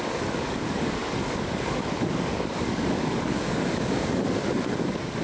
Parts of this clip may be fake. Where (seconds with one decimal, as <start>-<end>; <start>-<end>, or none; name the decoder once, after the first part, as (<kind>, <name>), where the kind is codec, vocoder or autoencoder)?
0.0-5.2 (codec, DAC)